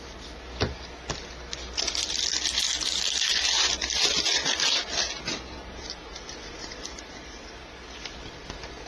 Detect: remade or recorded recorded